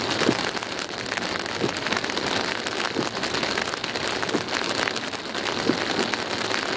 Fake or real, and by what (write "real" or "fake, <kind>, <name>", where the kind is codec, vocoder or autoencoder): real